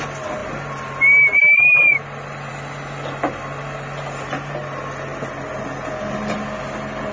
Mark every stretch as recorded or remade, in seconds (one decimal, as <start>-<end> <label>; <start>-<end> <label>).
0.0-7.1 recorded